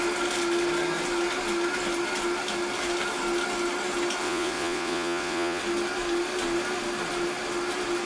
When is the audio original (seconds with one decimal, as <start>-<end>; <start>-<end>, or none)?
0.0-4.2; 5.6-8.1